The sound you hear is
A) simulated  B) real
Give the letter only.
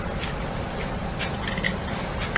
B